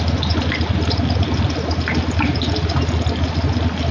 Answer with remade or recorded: recorded